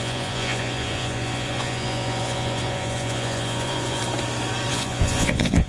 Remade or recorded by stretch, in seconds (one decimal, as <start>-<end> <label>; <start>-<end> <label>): 0.0-4.0 remade; 4.0-4.7 recorded; 4.7-5.7 remade